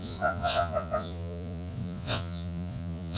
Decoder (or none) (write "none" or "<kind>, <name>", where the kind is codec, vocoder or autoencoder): vocoder, Vocos